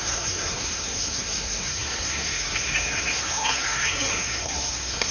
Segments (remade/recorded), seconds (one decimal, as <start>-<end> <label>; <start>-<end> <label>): 0.0-5.1 remade

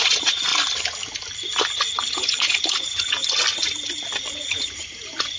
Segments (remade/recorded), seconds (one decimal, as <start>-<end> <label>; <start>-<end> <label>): 0.0-0.5 remade; 0.5-2.1 recorded; 2.1-3.2 remade; 3.2-4.3 recorded; 4.3-5.4 remade